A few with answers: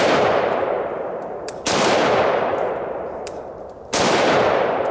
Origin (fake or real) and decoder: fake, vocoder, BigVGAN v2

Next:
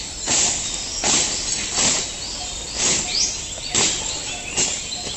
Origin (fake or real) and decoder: real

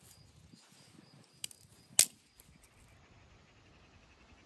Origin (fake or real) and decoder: real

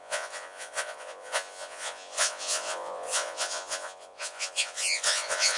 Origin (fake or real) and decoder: fake, vocoder, Vocos